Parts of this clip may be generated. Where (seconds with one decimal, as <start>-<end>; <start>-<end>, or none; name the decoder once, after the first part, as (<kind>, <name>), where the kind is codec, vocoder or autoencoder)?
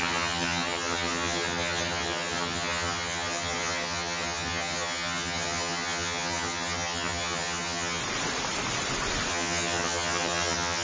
0.0-8.0 (vocoder, HiFi-GAN); 9.3-10.8